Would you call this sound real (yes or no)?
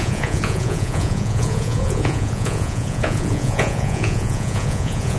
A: no